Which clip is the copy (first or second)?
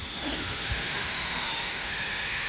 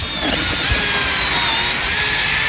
first